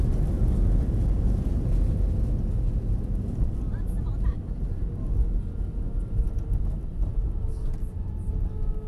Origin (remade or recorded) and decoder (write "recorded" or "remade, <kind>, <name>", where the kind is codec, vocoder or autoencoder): recorded